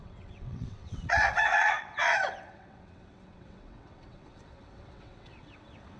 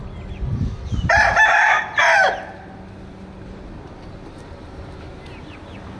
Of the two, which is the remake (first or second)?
first